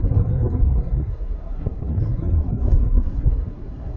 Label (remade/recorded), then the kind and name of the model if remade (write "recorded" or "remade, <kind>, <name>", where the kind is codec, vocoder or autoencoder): remade, codec, SNAC